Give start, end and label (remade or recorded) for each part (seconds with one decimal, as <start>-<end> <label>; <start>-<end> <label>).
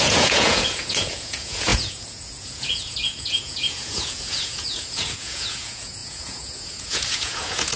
0.0-7.8 remade